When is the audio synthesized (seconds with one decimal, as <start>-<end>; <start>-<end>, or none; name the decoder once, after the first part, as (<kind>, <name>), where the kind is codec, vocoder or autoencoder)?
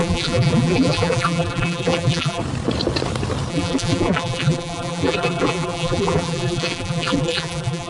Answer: 0.0-2.4 (vocoder, BigVGAN v2); 3.5-7.9